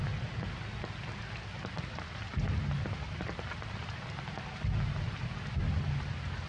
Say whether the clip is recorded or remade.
recorded